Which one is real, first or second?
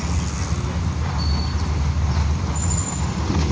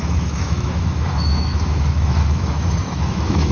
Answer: first